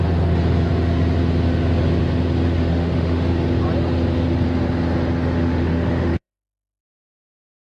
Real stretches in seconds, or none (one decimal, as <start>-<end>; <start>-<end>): 0.0-2.7; 3.3-5.4; 6.8-7.7